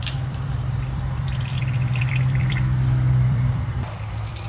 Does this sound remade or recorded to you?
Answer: remade